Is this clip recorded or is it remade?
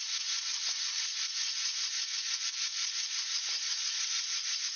remade